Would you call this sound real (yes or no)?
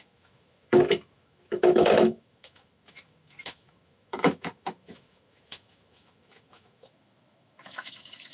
no